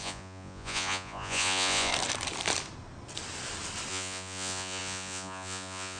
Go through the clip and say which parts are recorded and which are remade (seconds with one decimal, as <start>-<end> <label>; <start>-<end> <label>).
0.0-1.9 remade; 1.9-3.9 recorded; 3.9-6.0 remade